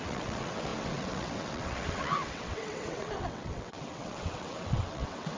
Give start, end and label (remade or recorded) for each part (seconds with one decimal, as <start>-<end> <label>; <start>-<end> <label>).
0.0-5.4 remade

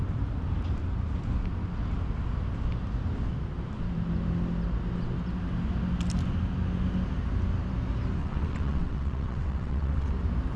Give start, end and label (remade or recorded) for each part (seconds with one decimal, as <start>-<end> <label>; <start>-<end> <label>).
0.0-8.2 recorded; 8.2-10.1 remade; 10.1-10.6 recorded

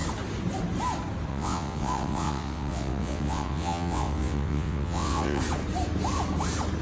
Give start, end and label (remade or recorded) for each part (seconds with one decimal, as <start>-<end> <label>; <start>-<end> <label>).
0.0-1.3 recorded; 1.3-5.4 remade; 5.4-6.8 recorded

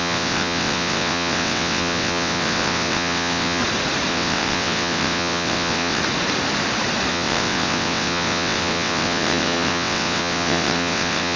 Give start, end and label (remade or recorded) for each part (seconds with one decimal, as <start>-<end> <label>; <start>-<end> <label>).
0.0-3.6 remade; 3.6-4.1 recorded; 4.1-6.0 remade; 6.0-7.1 recorded; 7.1-11.4 remade

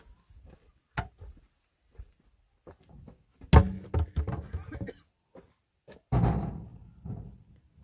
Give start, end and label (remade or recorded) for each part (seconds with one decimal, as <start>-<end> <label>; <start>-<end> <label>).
0.0-7.8 recorded

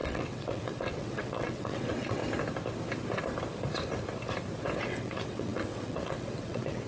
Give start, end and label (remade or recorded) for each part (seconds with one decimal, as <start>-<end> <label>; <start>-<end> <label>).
0.0-2.2 remade; 2.2-4.8 recorded; 4.8-6.9 remade

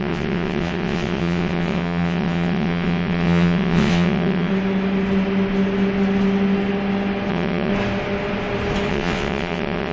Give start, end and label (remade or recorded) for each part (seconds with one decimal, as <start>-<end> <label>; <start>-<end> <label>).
0.0-4.5 remade; 4.5-7.3 recorded; 7.3-7.7 remade; 7.7-8.9 recorded; 8.9-9.9 remade